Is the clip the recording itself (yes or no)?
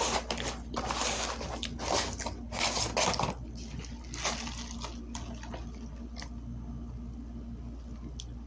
yes